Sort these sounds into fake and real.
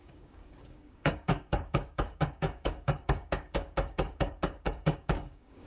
fake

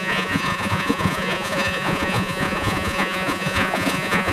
fake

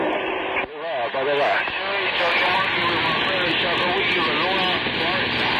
real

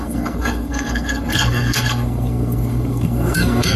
fake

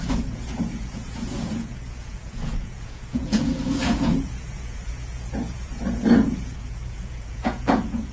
fake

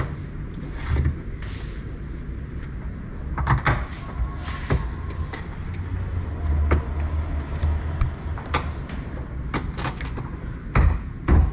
real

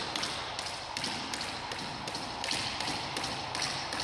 real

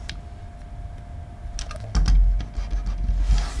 real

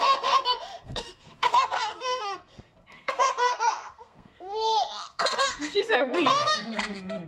fake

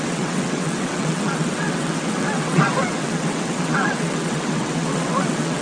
fake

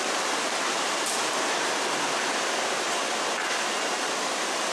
real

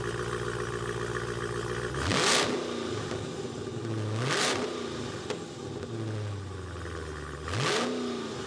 real